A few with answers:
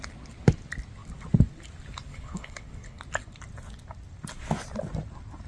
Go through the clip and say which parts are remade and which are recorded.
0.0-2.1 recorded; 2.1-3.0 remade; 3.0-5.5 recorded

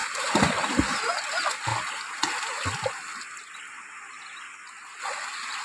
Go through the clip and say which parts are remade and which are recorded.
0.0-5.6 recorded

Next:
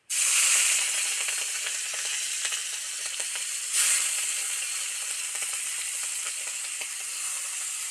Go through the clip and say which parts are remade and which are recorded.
0.0-7.9 recorded

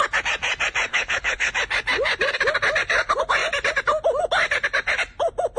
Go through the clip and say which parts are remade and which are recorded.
0.0-0.9 recorded; 0.9-1.5 remade; 1.5-5.6 recorded

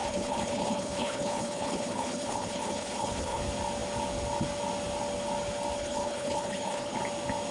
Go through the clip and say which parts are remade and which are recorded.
0.0-3.4 remade; 3.4-5.8 recorded; 5.8-7.0 remade; 7.0-7.5 recorded

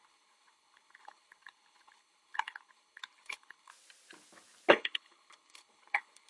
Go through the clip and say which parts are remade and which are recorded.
0.0-3.7 remade; 3.7-4.7 recorded; 4.7-6.3 remade